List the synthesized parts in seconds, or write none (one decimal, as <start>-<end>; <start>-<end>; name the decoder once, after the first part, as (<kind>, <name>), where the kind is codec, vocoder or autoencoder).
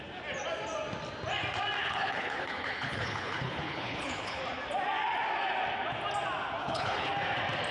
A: 1.8-4.4 (codec, HILCodec); 6.6-7.1